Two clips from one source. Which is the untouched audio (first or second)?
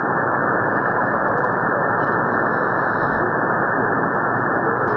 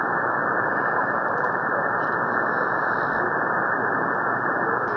first